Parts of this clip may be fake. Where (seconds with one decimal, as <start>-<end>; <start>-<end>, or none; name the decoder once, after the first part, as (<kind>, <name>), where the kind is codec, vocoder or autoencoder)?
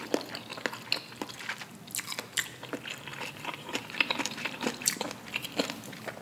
3.1-5.1 (vocoder, BigVGAN v2)